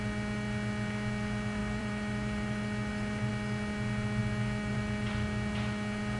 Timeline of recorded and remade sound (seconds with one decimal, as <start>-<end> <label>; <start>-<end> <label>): 0.0-1.6 recorded; 1.6-3.3 remade; 3.3-6.2 recorded

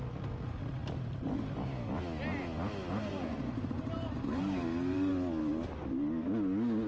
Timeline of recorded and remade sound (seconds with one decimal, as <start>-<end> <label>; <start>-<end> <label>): 0.0-3.1 recorded; 3.1-5.1 remade; 5.1-6.9 recorded

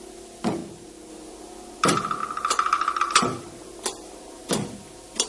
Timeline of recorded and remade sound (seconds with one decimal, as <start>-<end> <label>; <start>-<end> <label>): 0.0-5.3 recorded

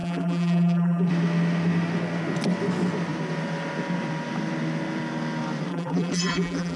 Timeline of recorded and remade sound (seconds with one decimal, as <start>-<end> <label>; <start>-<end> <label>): 0.0-1.1 remade; 1.1-5.7 recorded; 5.7-6.8 remade

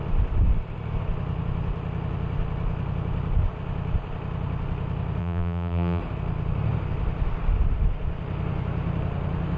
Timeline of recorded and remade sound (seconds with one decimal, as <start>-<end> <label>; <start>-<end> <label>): 0.0-5.2 recorded; 5.2-6.0 remade; 6.0-9.6 recorded

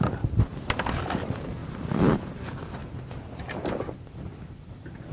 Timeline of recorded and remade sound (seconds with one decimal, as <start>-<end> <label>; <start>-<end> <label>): 0.0-1.6 recorded; 1.6-2.2 remade; 2.2-2.8 recorded; 2.8-3.4 remade; 3.4-5.1 recorded

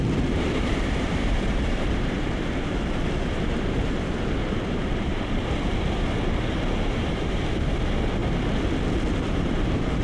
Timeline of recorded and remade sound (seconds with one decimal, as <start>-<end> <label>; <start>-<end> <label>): 0.0-8.2 remade; 8.2-9.3 recorded; 9.3-10.0 remade